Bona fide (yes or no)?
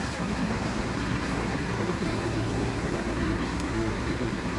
no